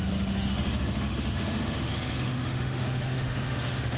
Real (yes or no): no